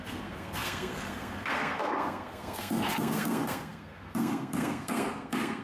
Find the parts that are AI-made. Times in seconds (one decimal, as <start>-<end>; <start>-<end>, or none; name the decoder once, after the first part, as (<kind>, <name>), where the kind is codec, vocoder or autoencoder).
0.0-5.6 (codec, SNAC)

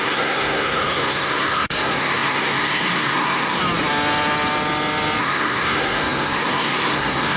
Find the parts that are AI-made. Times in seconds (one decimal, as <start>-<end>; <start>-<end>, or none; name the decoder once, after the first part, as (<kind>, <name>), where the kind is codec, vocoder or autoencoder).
0.0-3.6 (codec, SNAC); 5.2-7.4

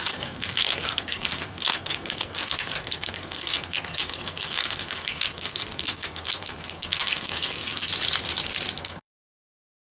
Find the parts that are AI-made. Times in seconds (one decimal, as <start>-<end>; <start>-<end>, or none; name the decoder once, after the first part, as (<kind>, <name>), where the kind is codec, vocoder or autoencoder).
0.0-7.9 (codec, SNAC); 8.8-9.9

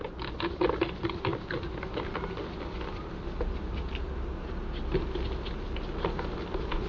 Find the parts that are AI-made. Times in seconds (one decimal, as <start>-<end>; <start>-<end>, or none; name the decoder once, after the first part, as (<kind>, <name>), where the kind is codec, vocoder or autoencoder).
none

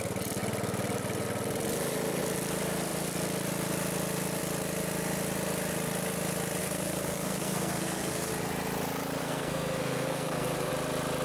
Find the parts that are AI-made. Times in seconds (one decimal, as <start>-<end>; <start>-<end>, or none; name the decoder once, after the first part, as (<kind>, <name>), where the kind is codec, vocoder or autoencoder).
6.6-8.3 (codec, SNAC); 9.2-10.7

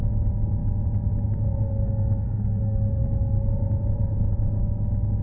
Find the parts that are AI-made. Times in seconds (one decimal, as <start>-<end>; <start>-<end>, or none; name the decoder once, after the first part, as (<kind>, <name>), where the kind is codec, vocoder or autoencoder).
2.2-3.0 (codec, SNAC)